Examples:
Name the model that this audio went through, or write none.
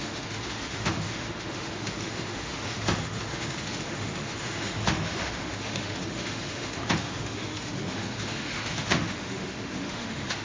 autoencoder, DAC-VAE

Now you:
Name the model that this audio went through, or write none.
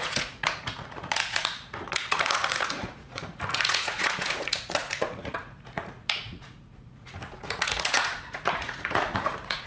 vocoder, Vocos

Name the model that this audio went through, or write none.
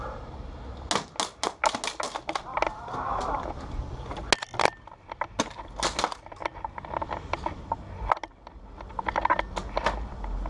none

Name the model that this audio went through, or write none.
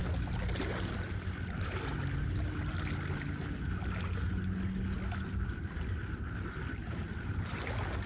none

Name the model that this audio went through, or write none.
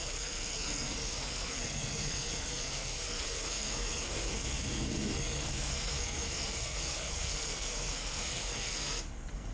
codec, SNAC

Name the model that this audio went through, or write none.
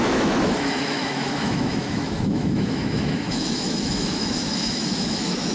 autoencoder, DAC-VAE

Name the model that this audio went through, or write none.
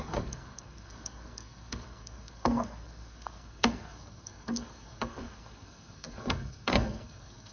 codec, SNAC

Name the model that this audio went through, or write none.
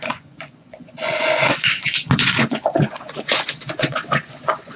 vocoder, Vocos